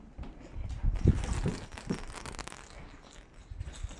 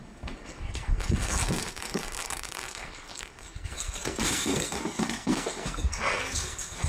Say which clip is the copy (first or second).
second